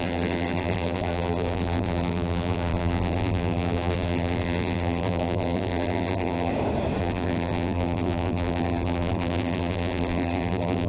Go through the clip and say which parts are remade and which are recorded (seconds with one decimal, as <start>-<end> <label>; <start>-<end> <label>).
0.0-6.5 remade; 6.5-7.0 recorded; 7.0-10.9 remade